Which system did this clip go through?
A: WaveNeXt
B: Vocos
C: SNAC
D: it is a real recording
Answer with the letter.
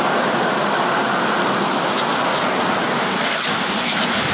D